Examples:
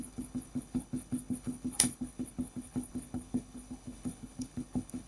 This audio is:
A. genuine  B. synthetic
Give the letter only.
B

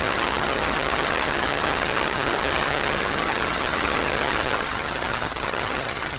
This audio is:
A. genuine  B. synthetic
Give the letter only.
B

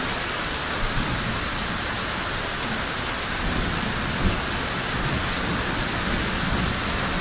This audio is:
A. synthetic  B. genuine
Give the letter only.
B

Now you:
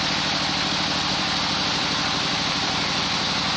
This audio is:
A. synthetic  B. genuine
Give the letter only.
A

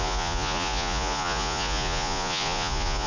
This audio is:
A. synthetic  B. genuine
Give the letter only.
A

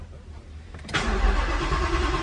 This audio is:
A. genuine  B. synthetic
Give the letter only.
B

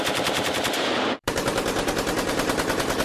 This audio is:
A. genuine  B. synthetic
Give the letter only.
B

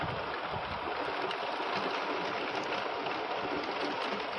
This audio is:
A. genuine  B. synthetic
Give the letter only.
A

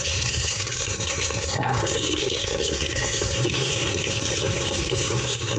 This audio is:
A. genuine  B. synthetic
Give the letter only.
B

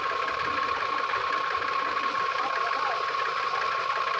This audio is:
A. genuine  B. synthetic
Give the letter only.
A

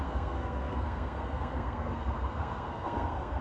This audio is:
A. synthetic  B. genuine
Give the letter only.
A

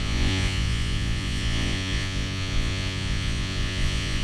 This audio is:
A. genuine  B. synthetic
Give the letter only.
B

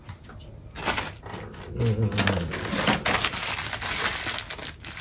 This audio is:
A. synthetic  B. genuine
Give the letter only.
B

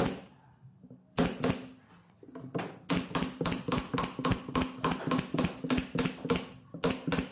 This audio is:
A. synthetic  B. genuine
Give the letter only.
B